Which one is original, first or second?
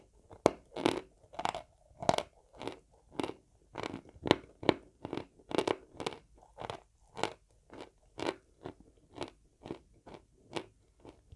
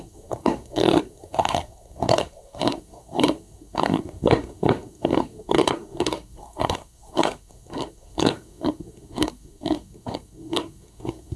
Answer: first